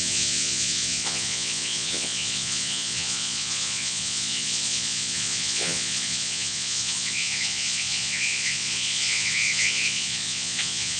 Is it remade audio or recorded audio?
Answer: remade